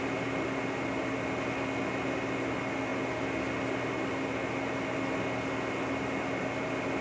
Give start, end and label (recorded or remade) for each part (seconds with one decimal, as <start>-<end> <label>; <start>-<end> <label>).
0.0-7.0 recorded

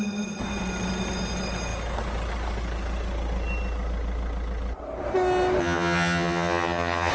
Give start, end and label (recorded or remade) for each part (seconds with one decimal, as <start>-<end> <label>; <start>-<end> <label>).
0.0-5.6 recorded; 5.6-7.1 remade

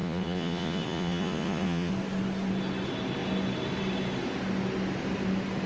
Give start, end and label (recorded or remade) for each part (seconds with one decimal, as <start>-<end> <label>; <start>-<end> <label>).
0.0-1.9 remade; 1.9-5.7 recorded

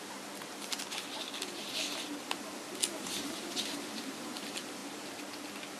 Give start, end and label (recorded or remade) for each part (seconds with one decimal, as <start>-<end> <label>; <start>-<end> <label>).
0.0-5.8 recorded

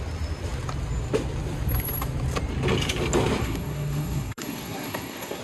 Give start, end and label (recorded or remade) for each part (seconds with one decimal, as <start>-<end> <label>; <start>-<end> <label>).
0.0-3.4 recorded; 3.4-5.4 remade

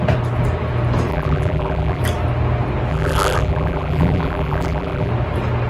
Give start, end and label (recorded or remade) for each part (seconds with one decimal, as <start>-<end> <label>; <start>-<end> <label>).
0.0-1.1 recorded; 1.1-2.0 remade; 2.0-2.9 recorded; 2.9-5.1 remade; 5.1-5.7 recorded

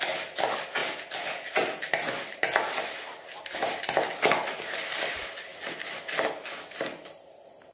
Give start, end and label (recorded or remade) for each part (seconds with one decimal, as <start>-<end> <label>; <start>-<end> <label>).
0.0-7.7 recorded